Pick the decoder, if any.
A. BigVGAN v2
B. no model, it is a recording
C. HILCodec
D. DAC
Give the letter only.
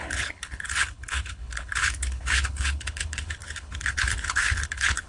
C